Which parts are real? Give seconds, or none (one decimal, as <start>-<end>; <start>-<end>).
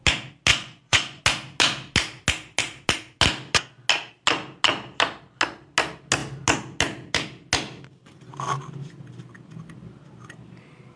0.0-0.5; 1.2-11.0